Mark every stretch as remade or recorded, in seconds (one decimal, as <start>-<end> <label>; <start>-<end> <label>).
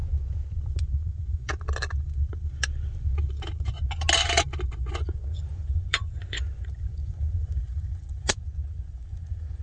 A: 0.0-1.1 recorded; 1.1-1.5 remade; 1.5-4.7 recorded; 4.7-9.6 remade